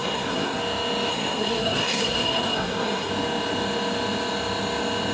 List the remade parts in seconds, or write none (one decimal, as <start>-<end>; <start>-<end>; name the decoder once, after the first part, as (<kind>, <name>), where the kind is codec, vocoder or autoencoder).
0.0-0.6 (codec, SNAC); 1.1-3.1